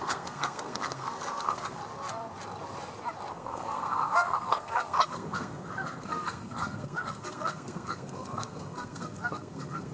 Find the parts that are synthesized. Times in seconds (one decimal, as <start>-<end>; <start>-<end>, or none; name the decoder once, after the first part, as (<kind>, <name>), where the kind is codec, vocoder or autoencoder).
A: 0.0-1.8 (codec, SNAC); 3.3-9.9